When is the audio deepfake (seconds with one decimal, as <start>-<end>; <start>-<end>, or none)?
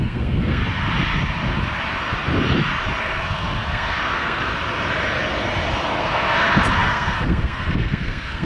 0.0-0.6; 3.0-4.5; 6.0-8.5